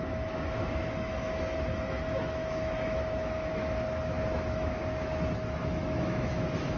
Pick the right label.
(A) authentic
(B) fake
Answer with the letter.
B